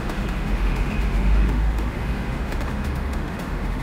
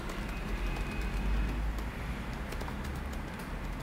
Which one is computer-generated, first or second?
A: first